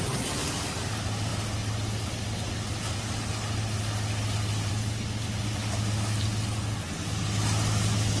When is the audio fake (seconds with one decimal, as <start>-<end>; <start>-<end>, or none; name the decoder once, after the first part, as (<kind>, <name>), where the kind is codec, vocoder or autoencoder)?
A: none